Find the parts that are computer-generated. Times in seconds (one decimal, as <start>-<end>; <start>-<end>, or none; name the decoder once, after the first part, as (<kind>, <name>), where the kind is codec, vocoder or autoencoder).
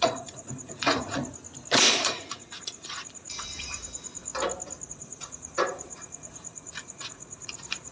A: 0.0-1.2 (vocoder, Vocos); 1.8-4.3; 4.9-7.9